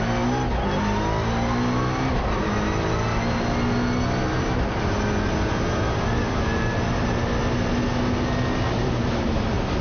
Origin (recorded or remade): recorded